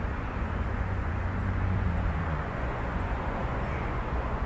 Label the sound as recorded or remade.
remade